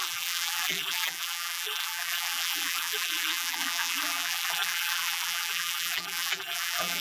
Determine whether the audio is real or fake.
fake